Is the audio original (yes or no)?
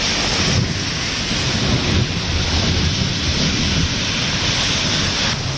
yes